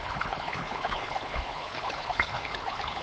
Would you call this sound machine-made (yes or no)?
yes